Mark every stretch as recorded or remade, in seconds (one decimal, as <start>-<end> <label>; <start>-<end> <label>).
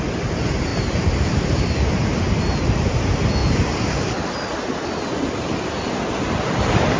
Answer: 0.0-0.7 recorded; 0.7-2.1 remade; 2.1-3.4 recorded; 3.4-3.9 remade; 3.9-7.0 recorded